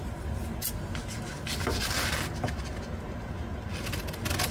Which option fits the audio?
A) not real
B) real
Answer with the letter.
B